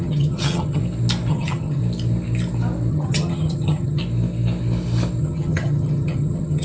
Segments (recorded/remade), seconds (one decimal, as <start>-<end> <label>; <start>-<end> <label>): 0.0-0.8 remade; 0.8-1.3 recorded; 1.3-1.8 remade; 1.8-2.9 recorded; 2.9-4.0 remade; 4.0-5.2 recorded; 5.2-6.6 remade